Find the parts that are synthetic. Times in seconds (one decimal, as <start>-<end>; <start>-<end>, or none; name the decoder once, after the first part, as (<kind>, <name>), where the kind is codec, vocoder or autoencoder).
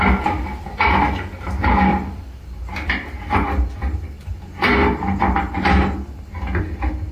1.9-4.3 (vocoder, BigVGAN v2)